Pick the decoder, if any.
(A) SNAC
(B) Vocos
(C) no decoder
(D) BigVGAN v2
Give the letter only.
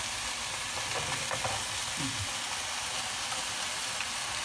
C